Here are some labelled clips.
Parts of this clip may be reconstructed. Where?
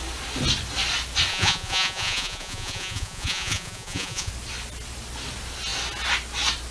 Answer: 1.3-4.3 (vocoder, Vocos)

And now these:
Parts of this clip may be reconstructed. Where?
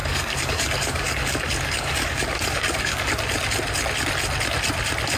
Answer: 0.0-3.1 (codec, DAC)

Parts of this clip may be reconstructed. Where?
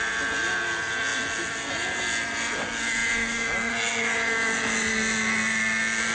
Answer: none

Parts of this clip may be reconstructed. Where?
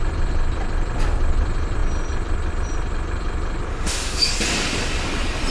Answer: 3.7-4.3 (autoencoder, DAC-VAE)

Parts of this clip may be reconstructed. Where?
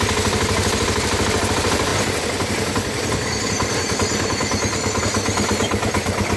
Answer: none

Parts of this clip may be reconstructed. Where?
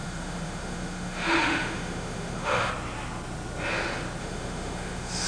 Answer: 0.0-2.7 (autoencoder, DAC-VAE); 4.2-5.3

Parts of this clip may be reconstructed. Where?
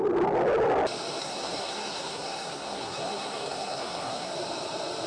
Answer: 1.2-4.3 (codec, SNAC)